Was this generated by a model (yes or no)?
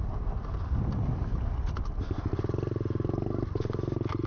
no